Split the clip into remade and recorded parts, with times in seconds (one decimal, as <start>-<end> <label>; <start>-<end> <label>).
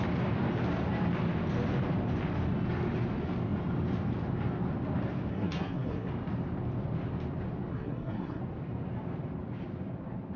0.0-5.3 recorded; 5.3-6.1 remade; 6.1-7.7 recorded; 7.7-8.4 remade; 8.4-10.4 recorded